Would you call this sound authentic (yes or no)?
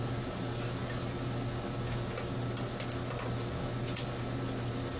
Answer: yes